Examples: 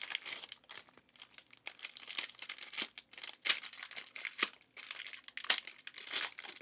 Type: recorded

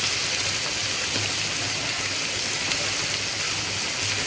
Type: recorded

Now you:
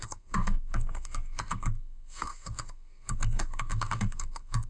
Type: remade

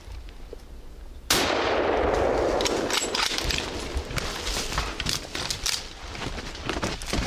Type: recorded